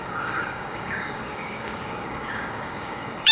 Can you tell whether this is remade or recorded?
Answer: remade